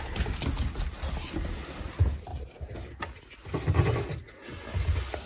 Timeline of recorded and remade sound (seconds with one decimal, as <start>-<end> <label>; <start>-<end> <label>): 0.0-5.3 recorded